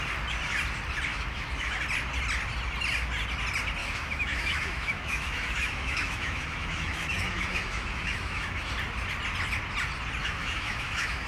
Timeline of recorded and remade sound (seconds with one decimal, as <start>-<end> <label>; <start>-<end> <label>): 0.0-1.1 recorded; 1.1-1.8 remade; 1.8-3.8 recorded; 3.8-8.7 remade; 8.7-10.2 recorded; 10.2-11.3 remade